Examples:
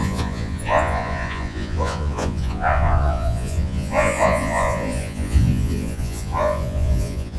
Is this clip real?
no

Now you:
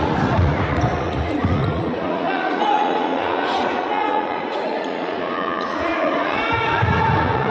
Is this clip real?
no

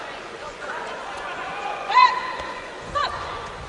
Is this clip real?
no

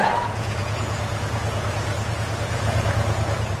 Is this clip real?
no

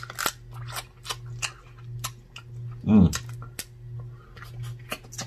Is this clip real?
yes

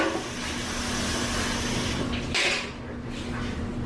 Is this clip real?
yes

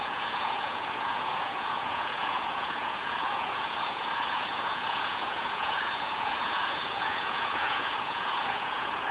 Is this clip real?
no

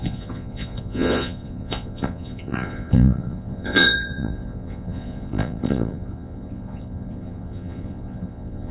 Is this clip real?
no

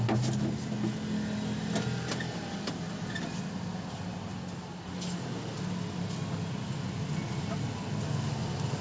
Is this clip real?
yes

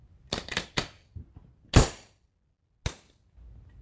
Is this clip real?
yes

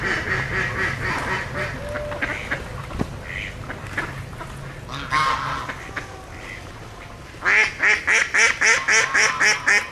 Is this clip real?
yes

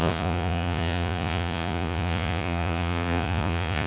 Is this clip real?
no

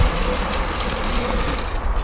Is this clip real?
yes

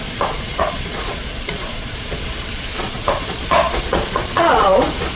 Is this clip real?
no